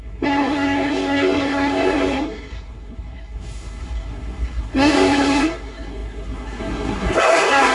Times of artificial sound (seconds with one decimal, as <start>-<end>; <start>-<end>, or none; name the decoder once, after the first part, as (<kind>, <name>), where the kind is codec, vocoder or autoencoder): 0.0-7.7 (codec, SNAC)